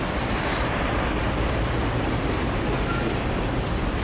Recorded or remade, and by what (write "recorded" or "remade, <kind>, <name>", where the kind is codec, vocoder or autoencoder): recorded